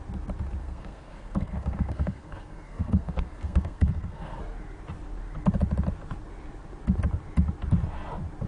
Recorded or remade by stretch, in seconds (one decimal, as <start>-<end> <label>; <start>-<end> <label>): 0.0-0.6 recorded; 0.6-4.4 remade; 4.4-8.5 recorded